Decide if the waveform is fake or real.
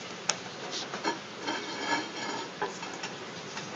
real